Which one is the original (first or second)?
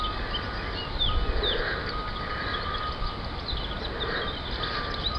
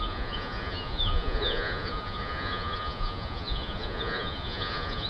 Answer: first